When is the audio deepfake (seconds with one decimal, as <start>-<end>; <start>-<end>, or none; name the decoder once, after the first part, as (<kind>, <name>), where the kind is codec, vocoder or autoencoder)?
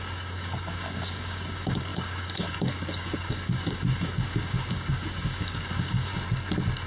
0.0-6.1 (codec, DAC)